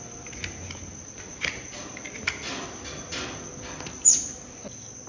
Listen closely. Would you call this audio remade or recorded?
recorded